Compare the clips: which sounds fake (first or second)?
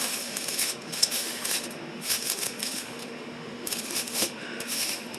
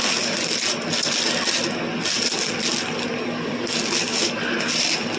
first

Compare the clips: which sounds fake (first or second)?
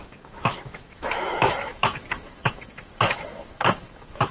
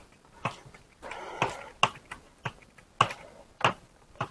first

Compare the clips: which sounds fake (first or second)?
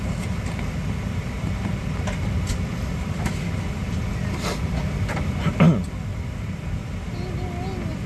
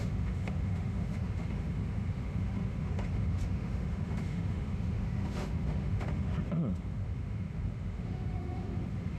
second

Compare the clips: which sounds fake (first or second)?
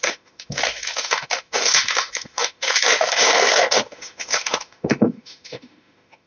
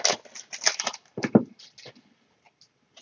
first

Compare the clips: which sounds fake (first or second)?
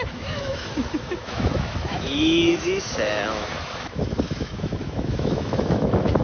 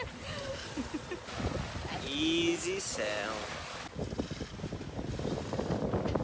first